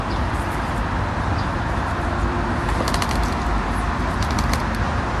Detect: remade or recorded recorded